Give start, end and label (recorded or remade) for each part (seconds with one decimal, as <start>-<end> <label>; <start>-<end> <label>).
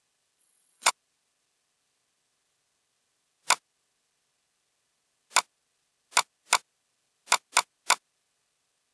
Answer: 0.0-0.4 recorded; 0.4-0.9 remade; 0.9-8.9 recorded